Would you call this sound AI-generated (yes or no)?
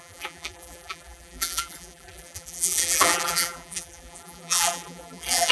yes